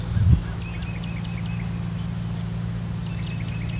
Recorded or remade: recorded